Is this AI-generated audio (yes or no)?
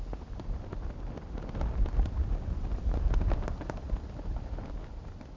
no